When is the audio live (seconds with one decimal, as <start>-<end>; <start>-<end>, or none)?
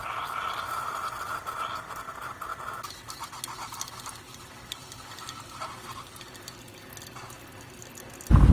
0.0-8.5